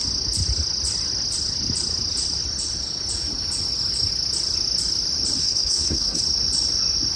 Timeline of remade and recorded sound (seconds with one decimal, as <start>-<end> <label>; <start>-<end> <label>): 0.0-5.4 recorded; 5.4-6.2 remade; 6.2-7.2 recorded